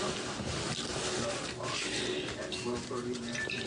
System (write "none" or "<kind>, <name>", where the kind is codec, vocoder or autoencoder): none